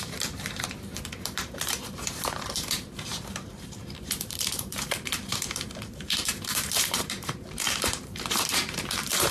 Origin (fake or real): fake